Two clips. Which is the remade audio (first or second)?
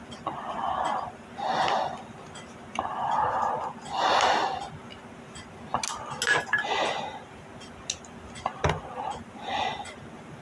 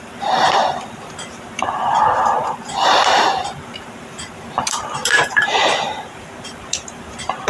second